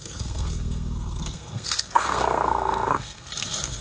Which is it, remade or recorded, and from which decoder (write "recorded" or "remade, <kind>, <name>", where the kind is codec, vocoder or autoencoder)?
remade, codec, SNAC